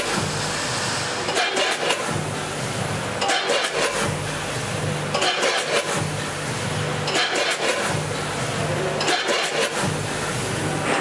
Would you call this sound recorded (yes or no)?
yes